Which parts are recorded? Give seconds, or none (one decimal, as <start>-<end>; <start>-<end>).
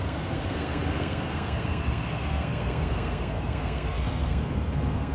none